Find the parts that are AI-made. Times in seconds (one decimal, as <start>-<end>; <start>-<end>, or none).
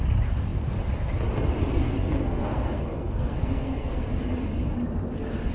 1.8-4.1